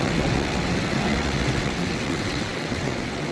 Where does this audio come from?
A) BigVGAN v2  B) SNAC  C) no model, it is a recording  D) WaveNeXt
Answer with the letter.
D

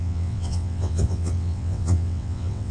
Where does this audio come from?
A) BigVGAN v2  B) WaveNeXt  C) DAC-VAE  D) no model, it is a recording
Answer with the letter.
B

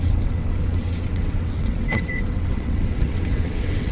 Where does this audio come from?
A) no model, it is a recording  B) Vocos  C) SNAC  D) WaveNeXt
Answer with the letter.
D